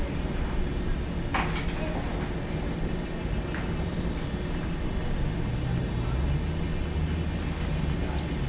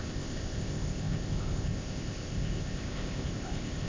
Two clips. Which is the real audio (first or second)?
first